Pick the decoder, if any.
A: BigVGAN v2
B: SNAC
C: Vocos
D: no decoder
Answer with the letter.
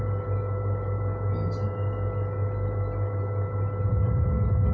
D